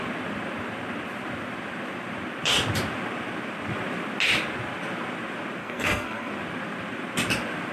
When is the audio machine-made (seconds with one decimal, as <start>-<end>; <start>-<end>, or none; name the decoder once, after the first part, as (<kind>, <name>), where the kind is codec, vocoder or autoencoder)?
5.6-6.3 (codec, SNAC)